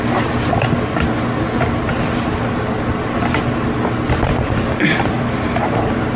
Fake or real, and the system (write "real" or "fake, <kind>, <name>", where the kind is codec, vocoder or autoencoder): real